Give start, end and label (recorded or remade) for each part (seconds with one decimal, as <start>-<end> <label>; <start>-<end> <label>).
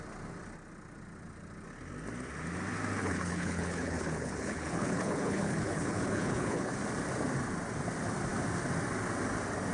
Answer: 0.0-3.0 recorded; 3.0-6.7 remade; 6.7-9.7 recorded